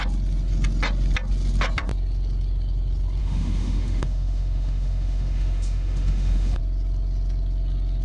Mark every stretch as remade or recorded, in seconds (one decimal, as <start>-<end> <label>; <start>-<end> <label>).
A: 0.0-3.2 recorded; 3.2-6.6 remade; 6.6-8.0 recorded